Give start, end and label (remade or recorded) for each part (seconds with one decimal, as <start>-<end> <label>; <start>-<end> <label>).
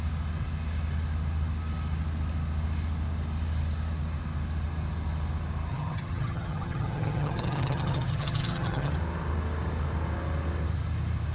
0.0-5.7 recorded; 5.7-8.9 remade; 8.9-11.3 recorded